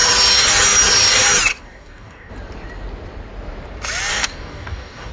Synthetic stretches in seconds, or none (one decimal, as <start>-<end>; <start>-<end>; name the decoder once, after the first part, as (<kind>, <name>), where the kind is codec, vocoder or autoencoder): 1.5-2.3 (codec, DAC); 4.1-5.1